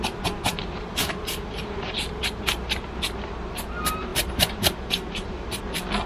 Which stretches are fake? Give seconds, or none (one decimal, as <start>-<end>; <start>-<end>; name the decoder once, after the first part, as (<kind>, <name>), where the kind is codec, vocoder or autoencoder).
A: 0.5-3.0 (vocoder, BigVGAN v2); 4.1-5.6